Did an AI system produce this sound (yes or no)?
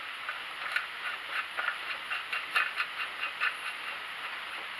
no